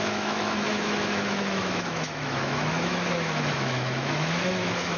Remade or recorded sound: remade